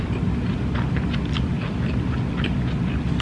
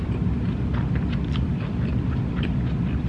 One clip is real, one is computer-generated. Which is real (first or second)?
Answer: first